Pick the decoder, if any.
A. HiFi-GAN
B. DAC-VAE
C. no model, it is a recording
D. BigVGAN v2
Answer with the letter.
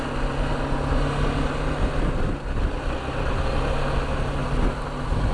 C